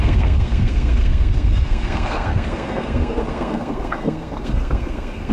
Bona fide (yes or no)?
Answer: no